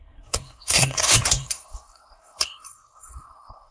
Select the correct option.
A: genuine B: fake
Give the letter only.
B